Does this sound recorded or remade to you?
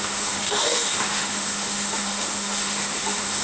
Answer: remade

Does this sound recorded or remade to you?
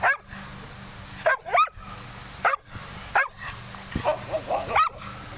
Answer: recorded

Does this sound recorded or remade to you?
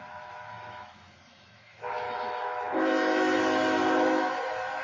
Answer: remade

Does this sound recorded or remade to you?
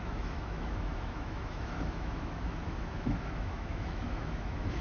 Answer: remade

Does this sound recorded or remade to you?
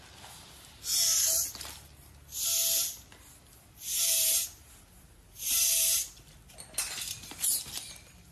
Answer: recorded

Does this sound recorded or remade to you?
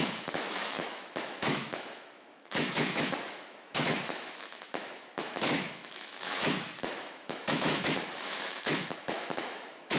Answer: remade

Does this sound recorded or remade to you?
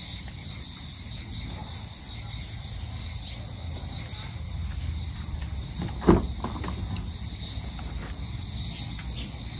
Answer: recorded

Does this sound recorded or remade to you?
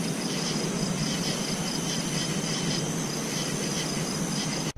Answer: recorded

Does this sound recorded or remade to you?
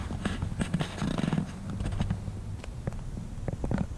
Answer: recorded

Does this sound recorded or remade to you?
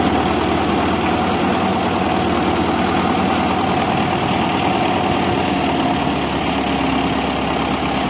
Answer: recorded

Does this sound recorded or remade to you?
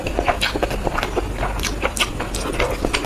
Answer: recorded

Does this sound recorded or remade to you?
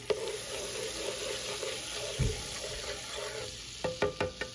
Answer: recorded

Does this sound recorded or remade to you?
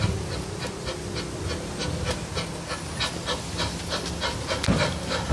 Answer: recorded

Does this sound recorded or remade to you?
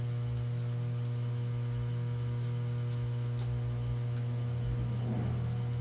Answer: recorded